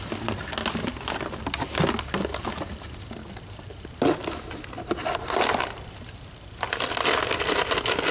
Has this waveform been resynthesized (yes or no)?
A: no